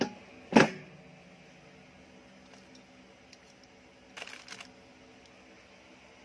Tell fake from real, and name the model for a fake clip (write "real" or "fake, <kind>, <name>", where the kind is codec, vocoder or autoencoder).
real